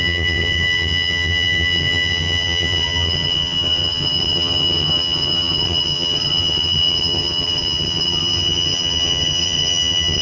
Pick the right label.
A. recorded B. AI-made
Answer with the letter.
B